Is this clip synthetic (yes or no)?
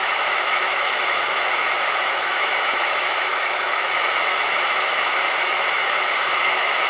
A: yes